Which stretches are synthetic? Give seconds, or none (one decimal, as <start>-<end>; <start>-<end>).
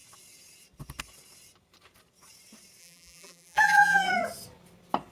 2.8-4.1